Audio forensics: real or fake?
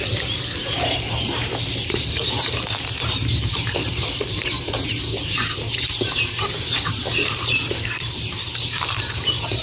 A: fake